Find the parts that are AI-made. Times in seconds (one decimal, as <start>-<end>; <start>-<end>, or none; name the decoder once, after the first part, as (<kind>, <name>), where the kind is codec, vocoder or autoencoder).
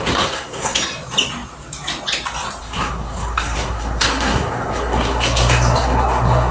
0.0-0.8 (codec, SNAC); 2.6-6.5